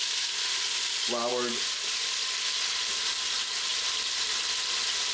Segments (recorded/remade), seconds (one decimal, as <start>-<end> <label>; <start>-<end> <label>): 0.0-5.1 recorded